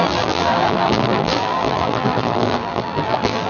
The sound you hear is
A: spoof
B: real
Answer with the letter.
A